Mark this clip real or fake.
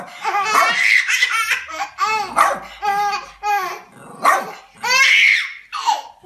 real